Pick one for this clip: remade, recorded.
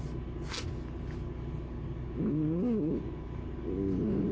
recorded